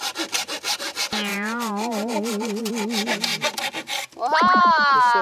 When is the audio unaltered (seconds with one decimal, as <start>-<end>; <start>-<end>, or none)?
0.0-1.3; 2.7-5.2